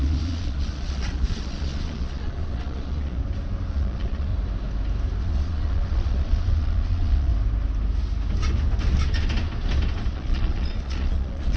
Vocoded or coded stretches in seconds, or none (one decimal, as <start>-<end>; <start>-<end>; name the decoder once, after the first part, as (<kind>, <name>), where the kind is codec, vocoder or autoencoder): 0.0-3.2 (vocoder, Vocos); 3.7-4.3; 5.2-7.3; 10.1-11.6